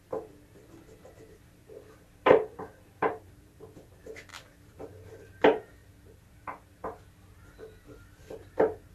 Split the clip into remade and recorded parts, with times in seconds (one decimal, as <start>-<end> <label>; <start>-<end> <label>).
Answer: 0.0-1.6 recorded; 1.6-3.6 remade; 3.6-4.3 recorded; 4.3-5.1 remade; 5.1-5.8 recorded; 5.8-7.0 remade; 7.0-8.9 recorded

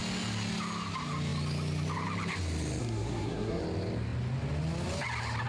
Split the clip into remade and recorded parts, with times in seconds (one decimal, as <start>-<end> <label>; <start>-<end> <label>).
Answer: 0.0-2.8 recorded; 2.8-3.6 remade; 3.6-5.5 recorded